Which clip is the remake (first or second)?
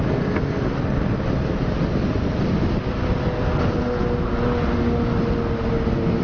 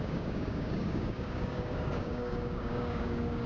second